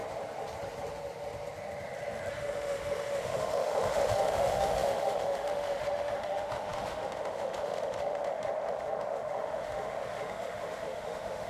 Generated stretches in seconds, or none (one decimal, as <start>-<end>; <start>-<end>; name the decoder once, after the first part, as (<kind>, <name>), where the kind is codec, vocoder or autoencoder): 2.3-11.5 (autoencoder, DAC-VAE)